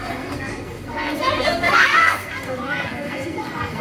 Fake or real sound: fake